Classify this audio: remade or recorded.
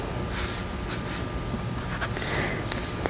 recorded